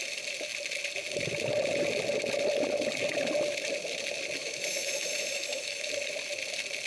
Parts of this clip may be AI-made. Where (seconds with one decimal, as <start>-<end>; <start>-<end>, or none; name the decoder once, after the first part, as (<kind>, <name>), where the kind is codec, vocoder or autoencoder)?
4.4-5.9 (autoencoder, DAC-VAE)